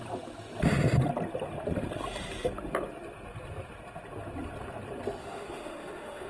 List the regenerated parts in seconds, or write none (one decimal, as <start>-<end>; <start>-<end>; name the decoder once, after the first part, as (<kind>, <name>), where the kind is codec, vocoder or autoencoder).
5.2-6.3 (autoencoder, DAC-VAE)